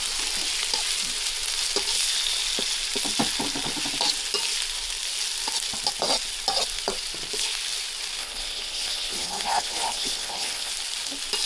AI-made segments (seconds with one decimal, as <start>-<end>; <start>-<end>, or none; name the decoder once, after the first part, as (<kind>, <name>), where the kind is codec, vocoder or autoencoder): 8.2-10.7 (codec, HILCodec)